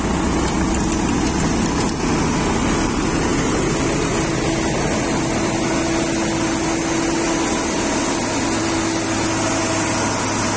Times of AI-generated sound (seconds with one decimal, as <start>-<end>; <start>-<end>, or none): none